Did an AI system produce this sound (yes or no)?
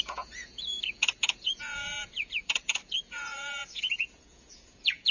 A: yes